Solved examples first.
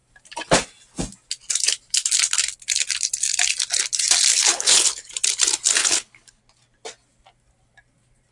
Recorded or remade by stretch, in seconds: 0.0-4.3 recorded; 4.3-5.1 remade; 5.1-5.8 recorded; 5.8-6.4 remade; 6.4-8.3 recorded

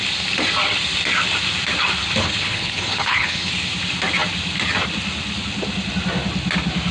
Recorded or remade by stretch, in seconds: 0.0-2.2 recorded; 2.2-3.5 remade; 3.5-6.9 recorded

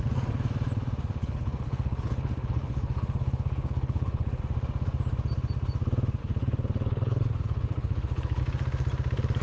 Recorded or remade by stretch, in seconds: 0.0-1.2 recorded; 1.2-4.4 remade; 4.4-6.2 recorded; 6.2-8.4 remade; 8.4-9.4 recorded